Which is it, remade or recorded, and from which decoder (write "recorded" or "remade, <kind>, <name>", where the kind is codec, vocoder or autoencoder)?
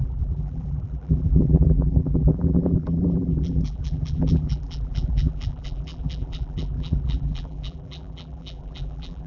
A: remade, vocoder, BigVGAN v2